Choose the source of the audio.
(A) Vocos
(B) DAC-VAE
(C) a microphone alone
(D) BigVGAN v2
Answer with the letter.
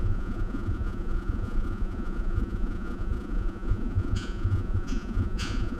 A